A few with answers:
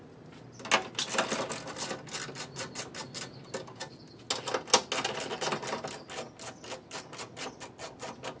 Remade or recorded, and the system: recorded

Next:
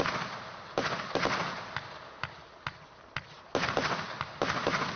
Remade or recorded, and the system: recorded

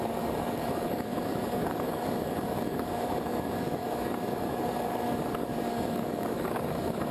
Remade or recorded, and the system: remade, codec, DAC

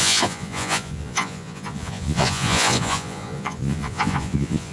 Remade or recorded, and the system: remade, vocoder, Vocos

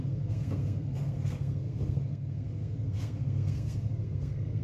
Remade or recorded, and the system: remade, codec, SNAC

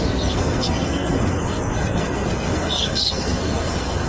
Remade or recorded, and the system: remade, codec, SNAC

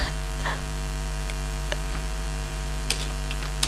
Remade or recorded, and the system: remade, vocoder, BigVGAN v2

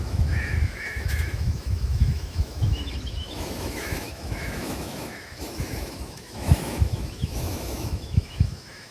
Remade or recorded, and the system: remade, autoencoder, DAC-VAE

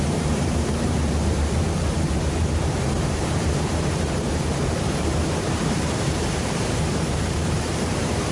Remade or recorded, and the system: remade, vocoder, BigVGAN v2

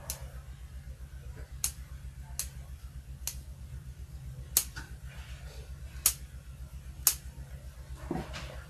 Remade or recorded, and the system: recorded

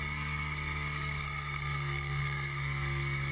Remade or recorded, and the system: remade, codec, DAC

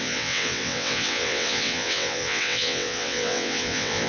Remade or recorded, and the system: remade, vocoder, WaveNeXt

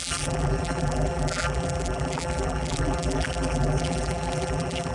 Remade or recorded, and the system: remade, vocoder, BigVGAN v2